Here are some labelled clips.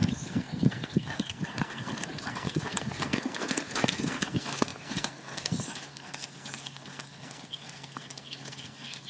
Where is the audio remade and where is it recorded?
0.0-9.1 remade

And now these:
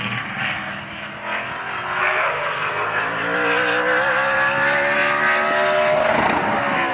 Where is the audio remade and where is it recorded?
0.0-2.0 recorded; 2.0-3.0 remade; 3.0-6.9 recorded

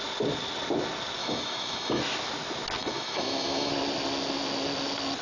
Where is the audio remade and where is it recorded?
0.0-1.2 recorded; 1.2-2.0 remade; 2.0-2.8 recorded; 2.8-3.7 remade; 3.7-5.2 recorded

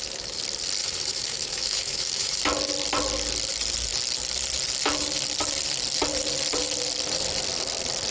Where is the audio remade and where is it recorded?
0.0-0.8 recorded; 0.8-2.4 remade; 2.4-8.1 recorded

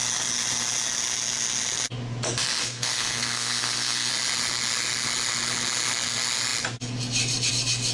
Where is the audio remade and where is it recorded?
0.0-2.6 recorded; 2.6-4.1 remade; 4.1-7.9 recorded